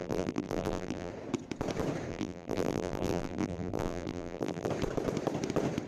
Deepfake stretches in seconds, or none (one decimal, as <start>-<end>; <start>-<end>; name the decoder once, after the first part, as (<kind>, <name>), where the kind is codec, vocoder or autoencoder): 0.0-1.1 (vocoder, BigVGAN v2); 2.1-4.7